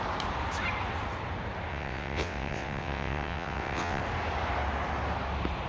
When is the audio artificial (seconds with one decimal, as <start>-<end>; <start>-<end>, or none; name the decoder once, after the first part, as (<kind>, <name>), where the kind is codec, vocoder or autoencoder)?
1.7-4.0 (vocoder, WaveNeXt)